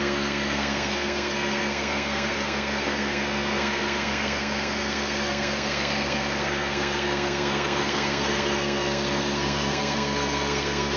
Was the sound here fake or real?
fake